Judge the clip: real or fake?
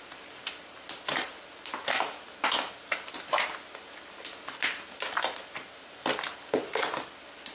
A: real